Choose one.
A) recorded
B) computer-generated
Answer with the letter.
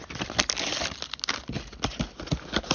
A